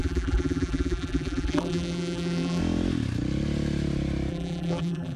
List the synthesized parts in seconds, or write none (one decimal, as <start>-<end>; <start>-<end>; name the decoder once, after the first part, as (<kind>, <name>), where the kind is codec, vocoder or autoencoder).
0.0-2.6 (vocoder, BigVGAN v2); 4.3-5.2